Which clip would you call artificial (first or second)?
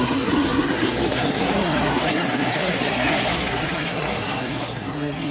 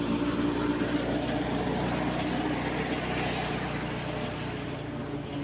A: first